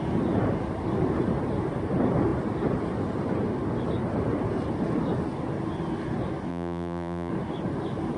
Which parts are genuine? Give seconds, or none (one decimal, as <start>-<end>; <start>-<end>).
0.0-6.5; 7.3-8.2

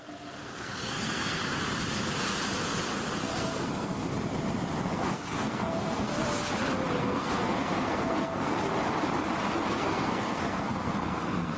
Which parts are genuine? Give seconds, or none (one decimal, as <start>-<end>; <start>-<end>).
1.4-3.2; 4.0-4.9; 6.1-7.0; 8.7-9.7

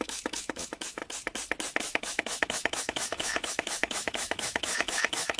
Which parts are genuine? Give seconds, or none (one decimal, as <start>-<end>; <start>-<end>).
1.0-1.8

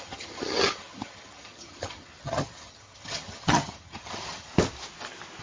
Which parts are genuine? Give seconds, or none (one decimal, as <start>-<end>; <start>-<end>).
4.5-5.4

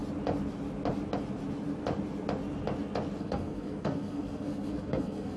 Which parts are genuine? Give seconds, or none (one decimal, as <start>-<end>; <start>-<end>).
0.0-3.2

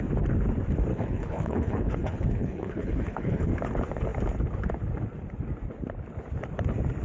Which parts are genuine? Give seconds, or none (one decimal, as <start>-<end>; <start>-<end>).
0.0-0.9; 3.5-7.0

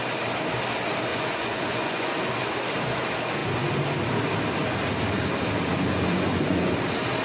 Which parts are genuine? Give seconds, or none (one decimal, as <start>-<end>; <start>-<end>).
0.0-1.1; 2.1-5.9; 6.7-7.2

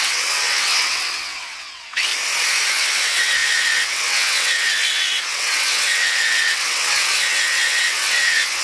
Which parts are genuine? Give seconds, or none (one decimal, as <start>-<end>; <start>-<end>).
2.1-2.7